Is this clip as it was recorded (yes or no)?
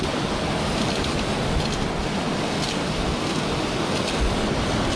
yes